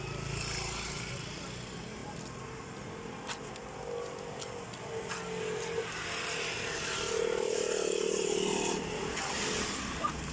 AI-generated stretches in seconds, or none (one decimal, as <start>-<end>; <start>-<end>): none